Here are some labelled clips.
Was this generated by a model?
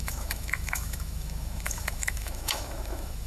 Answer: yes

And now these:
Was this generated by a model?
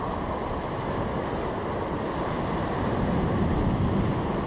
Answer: no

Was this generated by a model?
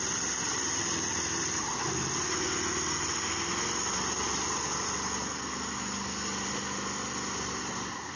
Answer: no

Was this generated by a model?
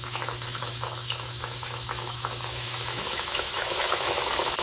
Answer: yes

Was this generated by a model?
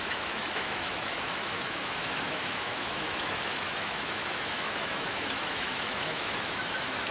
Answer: yes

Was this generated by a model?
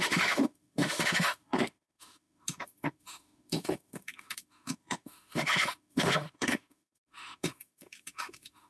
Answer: yes